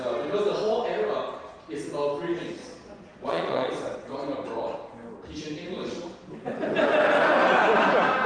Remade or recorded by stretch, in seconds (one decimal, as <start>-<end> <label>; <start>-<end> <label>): 0.0-2.6 recorded; 2.6-4.0 remade; 4.0-8.3 recorded